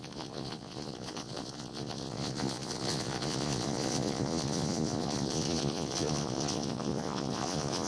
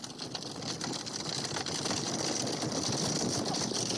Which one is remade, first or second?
first